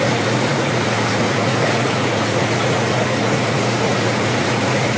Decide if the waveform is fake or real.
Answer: fake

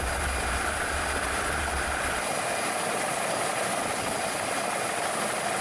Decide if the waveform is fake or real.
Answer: real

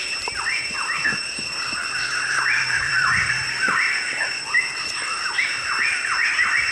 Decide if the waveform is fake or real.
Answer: fake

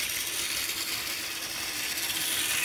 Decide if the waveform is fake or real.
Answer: real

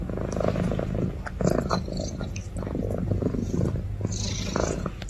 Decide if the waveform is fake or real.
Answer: real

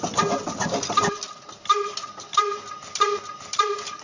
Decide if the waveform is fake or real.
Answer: real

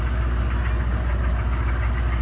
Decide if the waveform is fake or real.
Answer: real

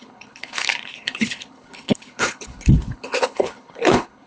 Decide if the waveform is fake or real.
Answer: fake